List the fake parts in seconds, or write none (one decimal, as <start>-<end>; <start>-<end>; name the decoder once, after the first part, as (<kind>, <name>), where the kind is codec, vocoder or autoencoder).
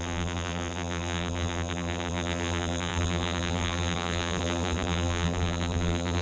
0.0-6.2 (vocoder, BigVGAN v2)